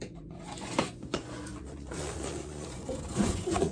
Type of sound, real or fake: fake